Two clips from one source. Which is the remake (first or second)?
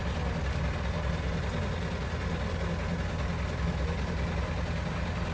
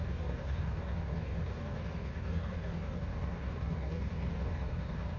second